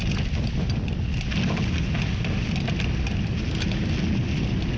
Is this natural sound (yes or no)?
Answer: yes